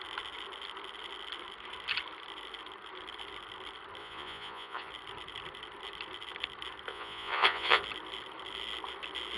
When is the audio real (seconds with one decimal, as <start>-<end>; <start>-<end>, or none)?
0.0-4.0; 4.9-6.9; 7.8-9.4